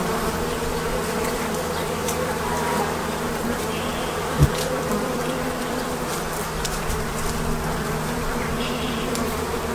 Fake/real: fake